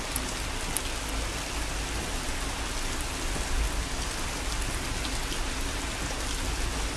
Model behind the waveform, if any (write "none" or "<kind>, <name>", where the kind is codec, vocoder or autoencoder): none